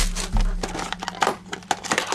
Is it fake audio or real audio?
real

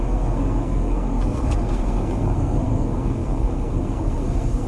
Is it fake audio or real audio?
fake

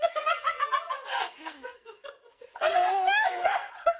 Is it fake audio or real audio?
fake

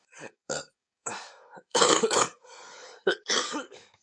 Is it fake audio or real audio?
fake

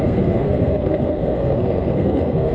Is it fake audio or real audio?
fake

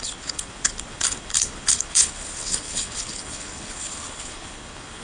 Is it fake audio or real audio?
fake